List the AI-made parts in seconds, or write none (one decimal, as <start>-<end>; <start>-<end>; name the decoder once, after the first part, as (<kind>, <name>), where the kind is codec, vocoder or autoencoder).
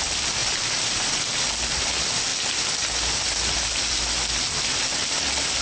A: none